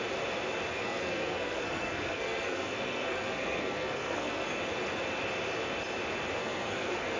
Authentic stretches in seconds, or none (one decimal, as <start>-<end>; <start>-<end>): 0.0-0.7; 4.6-6.4